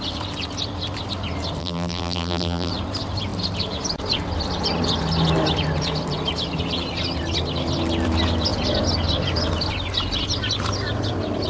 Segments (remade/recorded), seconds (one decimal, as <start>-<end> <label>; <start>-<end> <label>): 0.0-1.6 recorded; 1.6-2.7 remade; 2.7-11.5 recorded